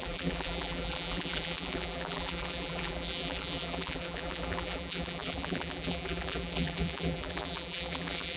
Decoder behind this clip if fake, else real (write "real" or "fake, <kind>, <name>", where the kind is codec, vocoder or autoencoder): fake, vocoder, BigVGAN v2